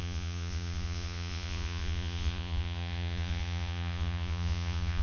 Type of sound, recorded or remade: remade